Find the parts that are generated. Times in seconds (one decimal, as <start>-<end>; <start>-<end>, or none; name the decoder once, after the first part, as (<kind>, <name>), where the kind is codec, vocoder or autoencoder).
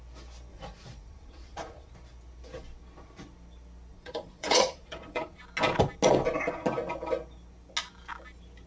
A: 0.5-1.9 (vocoder, Vocos); 3.9-5.4